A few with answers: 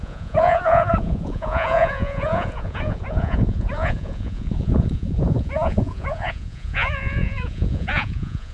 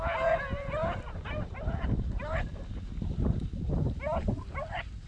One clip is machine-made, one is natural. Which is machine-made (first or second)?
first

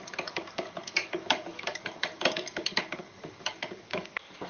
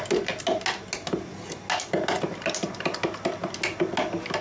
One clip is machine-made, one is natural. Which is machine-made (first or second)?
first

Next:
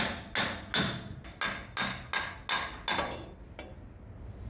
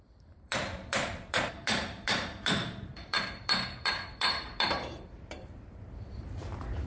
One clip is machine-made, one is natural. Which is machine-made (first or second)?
second